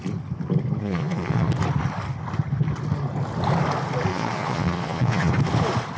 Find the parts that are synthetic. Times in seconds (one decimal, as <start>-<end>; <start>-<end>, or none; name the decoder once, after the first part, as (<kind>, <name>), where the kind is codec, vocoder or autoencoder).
0.8-1.5 (vocoder, Vocos); 4.1-5.3